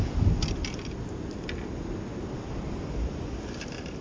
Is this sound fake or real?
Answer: real